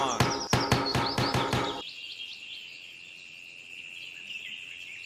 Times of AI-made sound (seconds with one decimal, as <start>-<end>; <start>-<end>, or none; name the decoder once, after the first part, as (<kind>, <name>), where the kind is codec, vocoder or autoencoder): 0.9-1.8 (vocoder, BigVGAN v2)